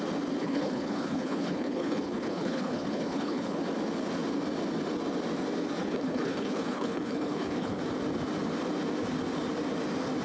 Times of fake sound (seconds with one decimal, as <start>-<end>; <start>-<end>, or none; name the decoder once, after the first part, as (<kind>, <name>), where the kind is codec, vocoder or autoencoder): 0.4-3.6 (codec, HILCodec); 5.8-7.8